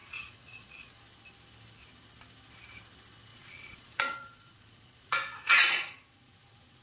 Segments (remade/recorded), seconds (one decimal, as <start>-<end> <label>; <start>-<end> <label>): 0.0-1.0 remade; 1.0-3.3 recorded; 3.3-6.8 remade